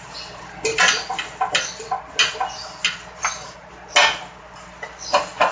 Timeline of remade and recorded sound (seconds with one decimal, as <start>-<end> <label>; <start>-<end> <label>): 0.0-5.5 recorded